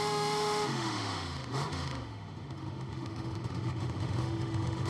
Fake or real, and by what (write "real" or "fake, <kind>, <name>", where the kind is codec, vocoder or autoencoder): fake, autoencoder, DAC-VAE